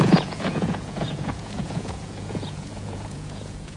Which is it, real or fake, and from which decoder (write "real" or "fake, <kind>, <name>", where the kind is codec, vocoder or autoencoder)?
fake, vocoder, Vocos